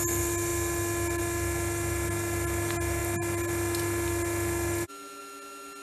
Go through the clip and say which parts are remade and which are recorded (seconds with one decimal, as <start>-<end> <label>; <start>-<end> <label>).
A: 0.0-5.8 recorded